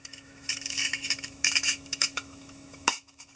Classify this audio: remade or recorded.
remade